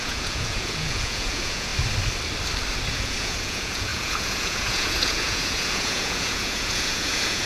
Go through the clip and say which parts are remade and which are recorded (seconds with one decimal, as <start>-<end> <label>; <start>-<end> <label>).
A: 0.0-1.7 remade; 1.7-2.9 recorded; 2.9-7.5 remade